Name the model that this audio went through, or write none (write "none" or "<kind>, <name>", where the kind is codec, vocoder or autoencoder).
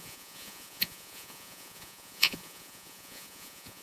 vocoder, Vocos